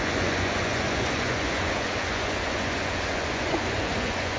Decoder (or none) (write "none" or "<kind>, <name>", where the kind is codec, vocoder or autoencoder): vocoder, Vocos